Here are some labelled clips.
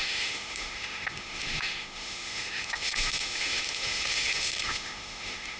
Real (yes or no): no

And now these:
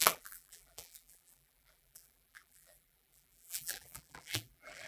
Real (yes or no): no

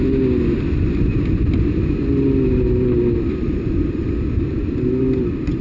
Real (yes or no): yes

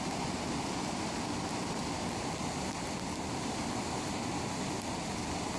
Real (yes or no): yes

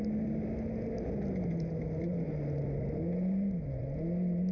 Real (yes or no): yes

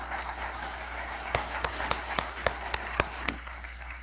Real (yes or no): no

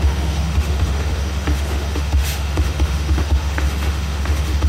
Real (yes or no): no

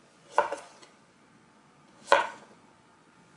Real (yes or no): no